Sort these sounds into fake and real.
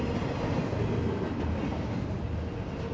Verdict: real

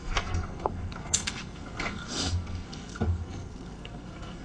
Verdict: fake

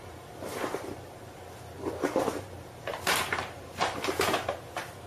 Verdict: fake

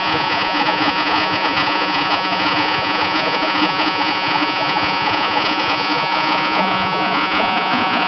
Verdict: fake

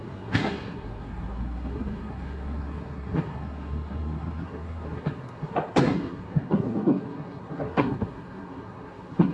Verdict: fake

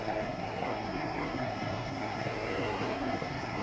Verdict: fake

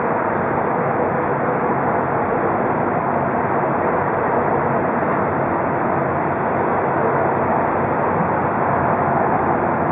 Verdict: real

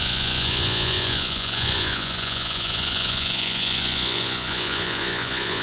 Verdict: fake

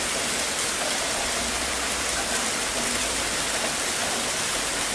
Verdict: fake